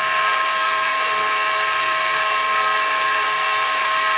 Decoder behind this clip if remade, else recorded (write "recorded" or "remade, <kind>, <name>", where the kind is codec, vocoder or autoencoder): remade, codec, SNAC